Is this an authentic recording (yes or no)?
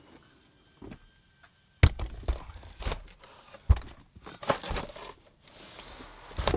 yes